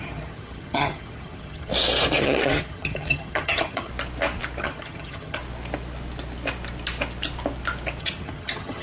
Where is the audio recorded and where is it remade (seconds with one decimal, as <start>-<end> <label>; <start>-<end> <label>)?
0.0-1.7 remade; 1.7-2.2 recorded; 2.2-3.9 remade; 3.9-4.6 recorded; 4.6-5.4 remade; 5.4-8.0 recorded; 8.0-8.8 remade